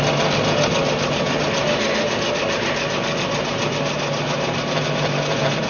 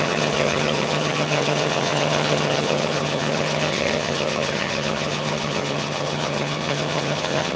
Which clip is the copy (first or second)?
second